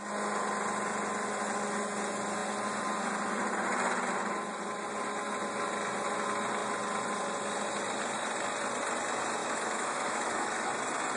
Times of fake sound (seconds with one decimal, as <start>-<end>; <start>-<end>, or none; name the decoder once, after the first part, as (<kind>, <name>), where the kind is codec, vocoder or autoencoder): 9.4-10.7 (autoencoder, DAC-VAE)